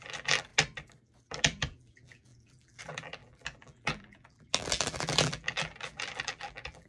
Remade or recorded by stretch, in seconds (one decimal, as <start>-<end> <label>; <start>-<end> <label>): 0.0-0.5 remade; 0.5-1.3 recorded; 1.3-6.9 remade